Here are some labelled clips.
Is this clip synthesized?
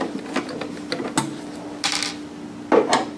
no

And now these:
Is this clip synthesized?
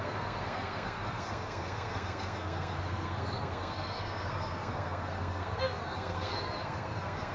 yes